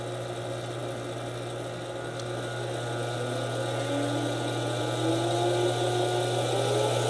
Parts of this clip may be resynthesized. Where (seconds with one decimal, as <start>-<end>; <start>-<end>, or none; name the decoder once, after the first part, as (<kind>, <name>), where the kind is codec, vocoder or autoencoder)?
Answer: none